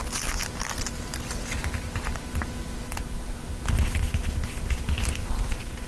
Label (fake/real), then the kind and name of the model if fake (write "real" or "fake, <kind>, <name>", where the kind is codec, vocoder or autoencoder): real